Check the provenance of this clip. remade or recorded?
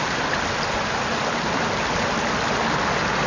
recorded